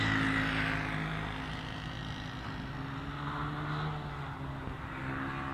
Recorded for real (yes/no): yes